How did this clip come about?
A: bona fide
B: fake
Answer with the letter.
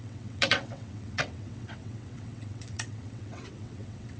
B